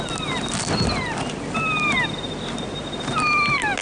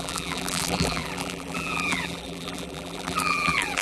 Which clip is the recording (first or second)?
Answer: first